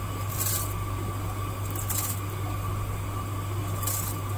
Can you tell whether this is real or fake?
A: real